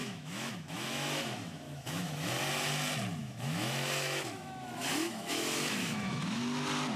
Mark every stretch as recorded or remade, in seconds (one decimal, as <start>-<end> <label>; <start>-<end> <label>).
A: 0.0-2.3 remade; 2.3-3.2 recorded; 3.2-6.4 remade; 6.4-7.0 recorded